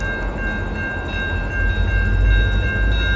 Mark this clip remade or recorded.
recorded